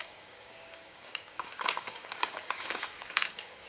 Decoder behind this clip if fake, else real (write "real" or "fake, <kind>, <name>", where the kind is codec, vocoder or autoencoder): fake, codec, DAC